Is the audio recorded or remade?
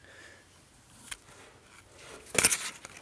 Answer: recorded